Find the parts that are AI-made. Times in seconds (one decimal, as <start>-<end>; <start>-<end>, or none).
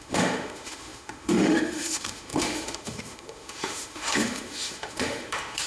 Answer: 0.0-5.7